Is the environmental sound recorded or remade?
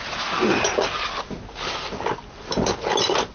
recorded